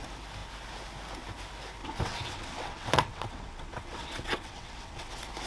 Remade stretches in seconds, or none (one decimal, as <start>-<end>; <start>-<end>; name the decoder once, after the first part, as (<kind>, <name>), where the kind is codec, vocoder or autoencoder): 1.8-5.1 (vocoder, WaveNeXt)